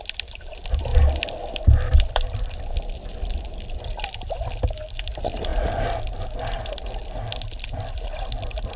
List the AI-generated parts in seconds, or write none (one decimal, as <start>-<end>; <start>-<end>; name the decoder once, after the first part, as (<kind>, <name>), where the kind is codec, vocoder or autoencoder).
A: 0.0-0.9 (vocoder, BigVGAN v2); 1.5-5.5; 7.9-8.8